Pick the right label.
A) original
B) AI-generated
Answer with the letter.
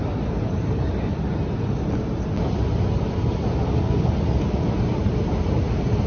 A